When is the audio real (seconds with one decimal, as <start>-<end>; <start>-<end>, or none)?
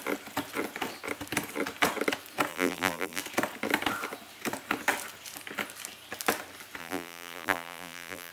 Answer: 0.0-2.5; 3.2-6.8